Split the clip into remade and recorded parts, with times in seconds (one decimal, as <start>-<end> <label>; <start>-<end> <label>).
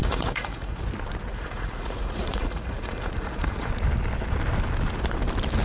0.0-0.8 remade; 0.8-1.3 recorded; 1.3-3.7 remade; 3.7-5.6 recorded